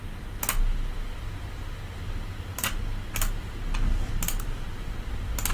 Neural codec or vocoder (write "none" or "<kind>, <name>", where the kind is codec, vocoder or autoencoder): none